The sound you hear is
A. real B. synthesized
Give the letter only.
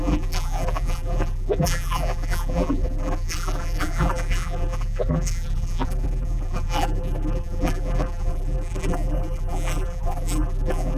B